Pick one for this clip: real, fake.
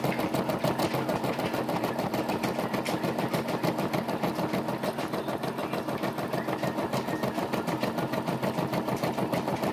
real